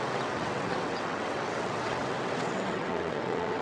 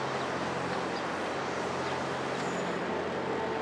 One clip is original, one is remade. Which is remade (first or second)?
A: first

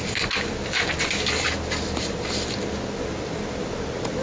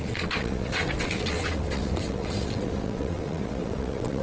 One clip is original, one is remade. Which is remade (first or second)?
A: second